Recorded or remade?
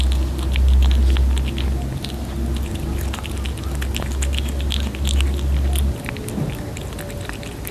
recorded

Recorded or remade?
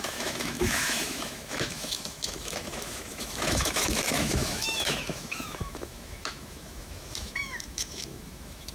remade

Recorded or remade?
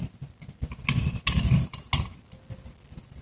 recorded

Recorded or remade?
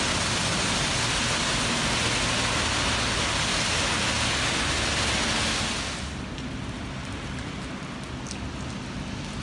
recorded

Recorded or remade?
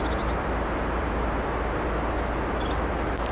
recorded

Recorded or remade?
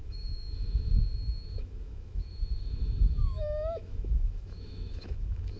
remade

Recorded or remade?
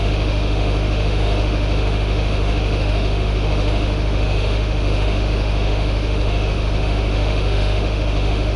remade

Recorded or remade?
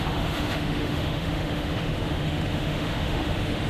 remade